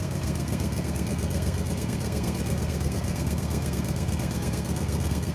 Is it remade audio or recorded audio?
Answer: remade